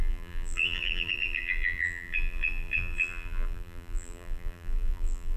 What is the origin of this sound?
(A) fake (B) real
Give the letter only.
A